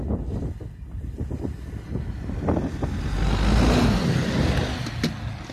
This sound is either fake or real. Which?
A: real